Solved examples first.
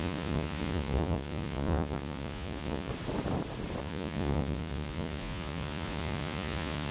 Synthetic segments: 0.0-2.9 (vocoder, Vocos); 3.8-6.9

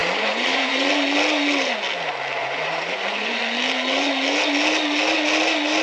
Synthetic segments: 0.0-0.9 (vocoder, Vocos); 2.4-3.4

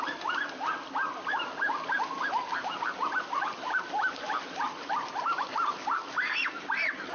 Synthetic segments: none

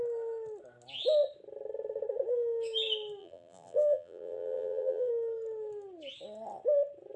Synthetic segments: 3.2-5.1 (vocoder, BigVGAN v2)

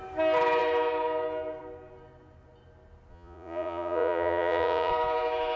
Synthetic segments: 3.1-4.9 (vocoder, Vocos)

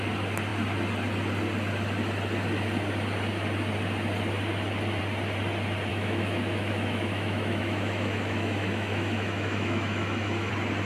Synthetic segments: 5.9-10.5 (autoencoder, DAC-VAE)

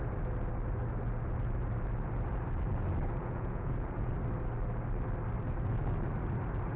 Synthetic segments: 3.2-4.1 (vocoder, Vocos)